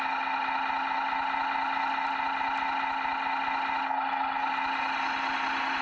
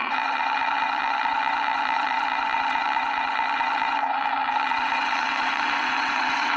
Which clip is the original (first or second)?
first